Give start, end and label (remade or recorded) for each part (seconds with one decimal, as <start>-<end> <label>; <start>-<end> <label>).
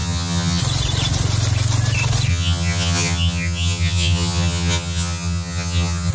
0.0-0.6 remade; 0.6-2.3 recorded; 2.3-6.1 remade